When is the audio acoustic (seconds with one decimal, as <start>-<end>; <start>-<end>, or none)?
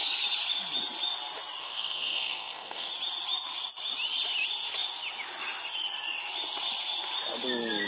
0.0-1.6; 2.9-7.9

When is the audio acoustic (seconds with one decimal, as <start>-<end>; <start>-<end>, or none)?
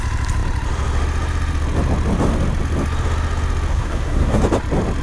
0.0-3.7; 4.4-5.0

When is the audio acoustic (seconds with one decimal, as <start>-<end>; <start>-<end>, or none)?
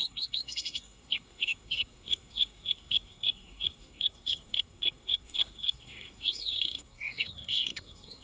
none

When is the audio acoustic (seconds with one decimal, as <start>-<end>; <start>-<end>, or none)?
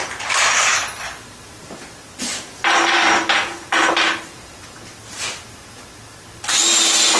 0.0-7.2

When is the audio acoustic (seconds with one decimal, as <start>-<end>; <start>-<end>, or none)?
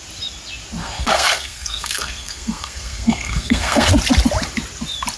0.0-0.8; 3.9-5.2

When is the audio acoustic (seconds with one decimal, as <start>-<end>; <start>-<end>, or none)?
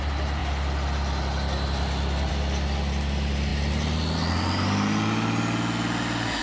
0.0-6.4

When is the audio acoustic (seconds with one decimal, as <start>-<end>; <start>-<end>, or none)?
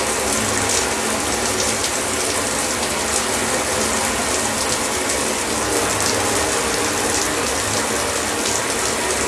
0.0-9.3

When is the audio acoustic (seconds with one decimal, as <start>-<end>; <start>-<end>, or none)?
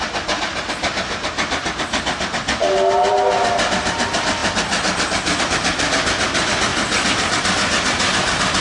0.0-8.6